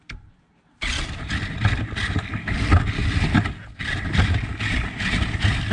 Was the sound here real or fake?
real